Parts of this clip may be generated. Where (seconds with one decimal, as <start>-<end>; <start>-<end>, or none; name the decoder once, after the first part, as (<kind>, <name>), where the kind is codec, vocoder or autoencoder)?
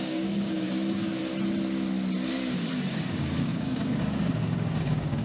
0.0-1.2 (codec, DAC); 2.3-5.2